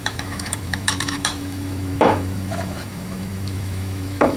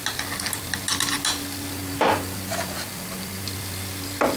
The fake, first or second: first